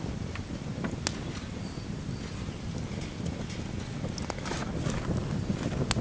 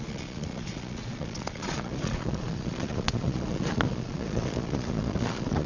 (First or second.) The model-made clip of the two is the second